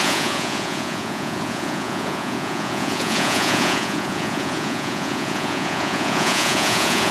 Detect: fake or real fake